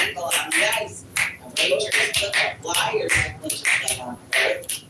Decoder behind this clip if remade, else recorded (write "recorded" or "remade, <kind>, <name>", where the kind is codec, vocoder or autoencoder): recorded